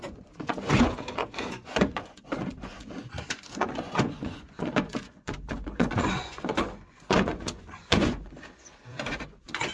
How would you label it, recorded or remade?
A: remade